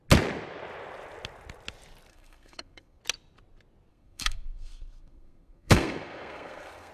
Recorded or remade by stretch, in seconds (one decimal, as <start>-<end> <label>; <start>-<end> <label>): 0.0-2.1 recorded; 2.1-3.0 remade; 3.0-3.9 recorded; 3.9-6.9 remade